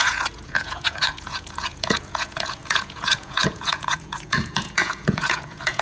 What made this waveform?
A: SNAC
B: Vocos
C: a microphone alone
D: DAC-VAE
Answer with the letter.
B